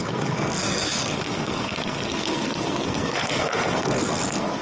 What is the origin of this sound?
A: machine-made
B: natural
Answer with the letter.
A